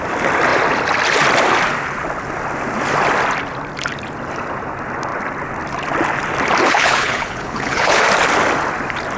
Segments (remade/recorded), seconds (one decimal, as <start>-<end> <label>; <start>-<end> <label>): 0.0-6.6 recorded; 6.6-8.0 remade; 8.0-9.2 recorded

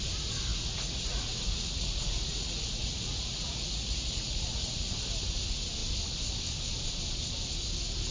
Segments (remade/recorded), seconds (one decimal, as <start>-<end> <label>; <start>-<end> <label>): 0.0-0.5 recorded; 0.5-4.9 remade; 4.9-8.1 recorded

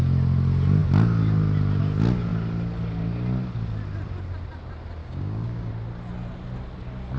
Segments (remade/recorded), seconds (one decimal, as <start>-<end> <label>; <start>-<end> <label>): 0.0-5.0 recorded; 5.0-5.7 remade; 5.7-7.2 recorded

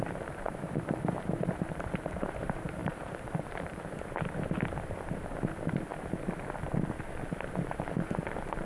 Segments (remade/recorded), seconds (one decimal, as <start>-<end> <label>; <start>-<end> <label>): 0.0-5.9 remade; 5.9-7.5 recorded; 7.5-8.7 remade

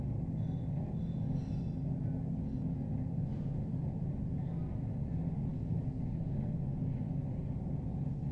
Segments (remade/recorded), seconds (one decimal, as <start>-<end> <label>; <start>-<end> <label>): 0.0-8.3 recorded

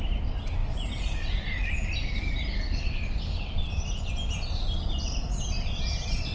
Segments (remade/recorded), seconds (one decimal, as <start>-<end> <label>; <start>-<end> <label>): 0.0-6.3 recorded

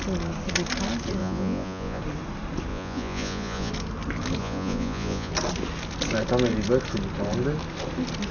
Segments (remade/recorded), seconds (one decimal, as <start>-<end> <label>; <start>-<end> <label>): 0.0-1.2 recorded; 1.2-2.0 remade; 2.0-2.7 recorded; 2.7-3.7 remade; 3.7-4.4 recorded; 4.4-5.3 remade; 5.3-8.3 recorded